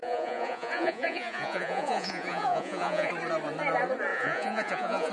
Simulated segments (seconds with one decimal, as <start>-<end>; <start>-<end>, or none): 0.0-3.1; 4.1-5.1